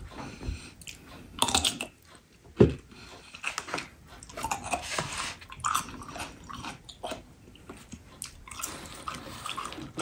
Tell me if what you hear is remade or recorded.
recorded